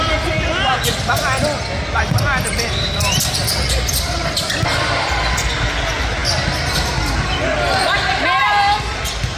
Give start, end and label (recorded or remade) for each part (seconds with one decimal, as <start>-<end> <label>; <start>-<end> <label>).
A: 0.0-9.4 recorded